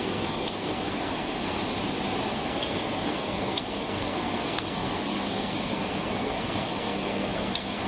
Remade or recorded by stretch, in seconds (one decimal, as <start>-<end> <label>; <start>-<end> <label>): 0.0-1.6 remade; 1.6-2.3 recorded; 2.3-7.9 remade